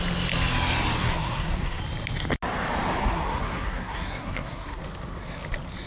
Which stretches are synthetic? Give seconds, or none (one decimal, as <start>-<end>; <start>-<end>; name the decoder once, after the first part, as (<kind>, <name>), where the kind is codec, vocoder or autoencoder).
1.0-1.8 (codec, SNAC); 3.0-4.8